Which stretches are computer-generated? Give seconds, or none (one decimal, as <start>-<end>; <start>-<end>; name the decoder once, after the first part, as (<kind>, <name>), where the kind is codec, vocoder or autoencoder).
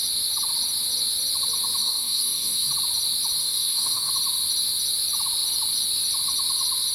1.8-2.7 (codec, DAC); 3.4-4.1